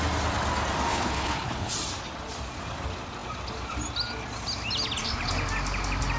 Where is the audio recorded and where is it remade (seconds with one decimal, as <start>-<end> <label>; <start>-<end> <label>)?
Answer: 0.0-0.9 recorded; 0.9-1.7 remade; 1.7-6.2 recorded